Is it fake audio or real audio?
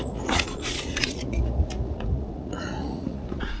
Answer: fake